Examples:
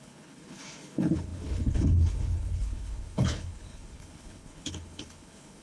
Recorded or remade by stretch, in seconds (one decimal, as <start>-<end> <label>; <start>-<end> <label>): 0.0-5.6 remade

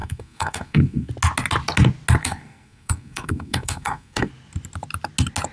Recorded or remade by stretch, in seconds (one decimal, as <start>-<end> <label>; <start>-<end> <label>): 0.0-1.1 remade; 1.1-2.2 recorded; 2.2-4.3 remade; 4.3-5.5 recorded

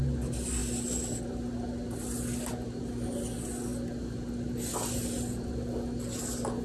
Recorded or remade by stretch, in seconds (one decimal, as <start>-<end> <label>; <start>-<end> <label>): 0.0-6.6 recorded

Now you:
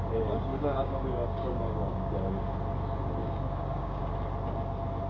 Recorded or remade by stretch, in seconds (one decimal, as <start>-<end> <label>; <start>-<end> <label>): 0.0-0.5 recorded; 0.5-2.1 remade; 2.1-3.2 recorded; 3.2-4.0 remade; 4.0-5.1 recorded